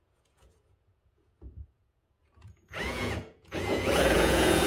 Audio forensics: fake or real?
fake